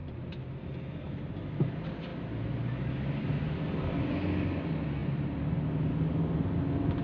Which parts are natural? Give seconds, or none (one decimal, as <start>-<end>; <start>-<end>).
0.0-7.0